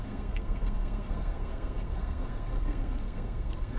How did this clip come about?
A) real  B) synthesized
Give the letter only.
B